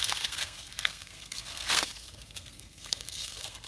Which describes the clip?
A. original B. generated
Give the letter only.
B